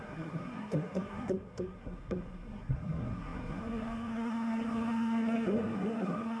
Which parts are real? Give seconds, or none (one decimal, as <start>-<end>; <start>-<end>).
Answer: none